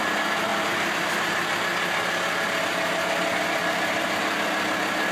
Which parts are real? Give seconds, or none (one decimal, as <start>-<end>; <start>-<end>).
1.7-3.4